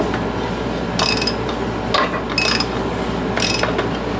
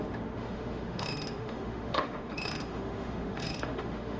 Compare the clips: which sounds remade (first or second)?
second